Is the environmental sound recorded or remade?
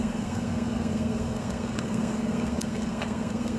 remade